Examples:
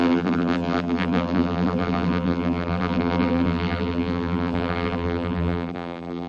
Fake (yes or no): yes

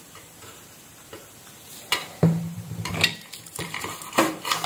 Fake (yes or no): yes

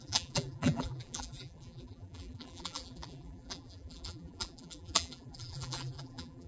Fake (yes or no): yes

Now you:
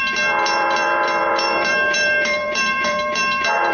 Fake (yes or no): yes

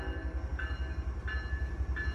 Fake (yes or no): no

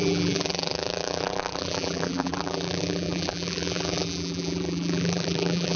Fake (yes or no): yes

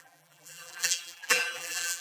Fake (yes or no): yes